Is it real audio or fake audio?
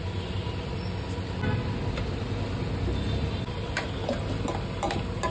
real